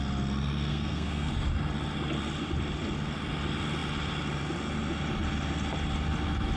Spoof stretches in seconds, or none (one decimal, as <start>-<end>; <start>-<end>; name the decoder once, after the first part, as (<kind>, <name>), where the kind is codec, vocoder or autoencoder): 0.7-1.3 (codec, SNAC)

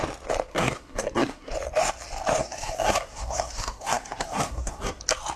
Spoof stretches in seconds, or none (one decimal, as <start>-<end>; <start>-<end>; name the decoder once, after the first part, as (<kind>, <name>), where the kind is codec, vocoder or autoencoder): 0.5-1.5 (codec, SNAC); 2.4-5.0